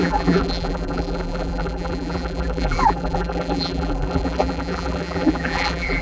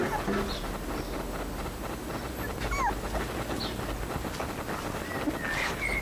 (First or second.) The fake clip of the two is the first